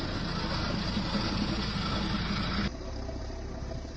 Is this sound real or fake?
real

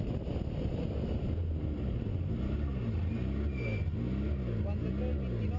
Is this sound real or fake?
real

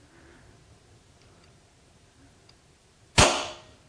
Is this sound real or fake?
real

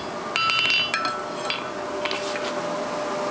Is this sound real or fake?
real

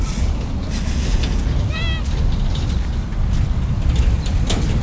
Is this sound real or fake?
real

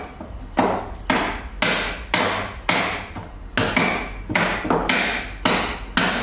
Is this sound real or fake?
real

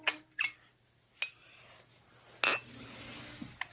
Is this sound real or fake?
real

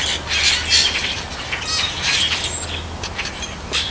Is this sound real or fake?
real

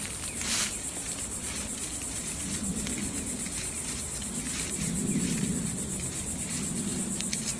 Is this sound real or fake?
real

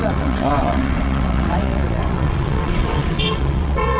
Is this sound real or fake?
fake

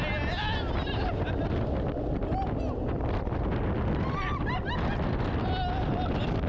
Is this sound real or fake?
real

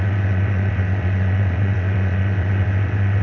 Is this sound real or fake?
fake